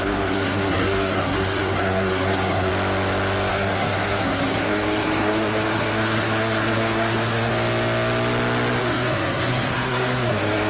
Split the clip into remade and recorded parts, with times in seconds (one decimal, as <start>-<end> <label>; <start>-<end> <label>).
0.0-2.7 remade; 2.7-3.5 recorded; 3.5-7.5 remade; 7.5-8.8 recorded; 8.8-10.7 remade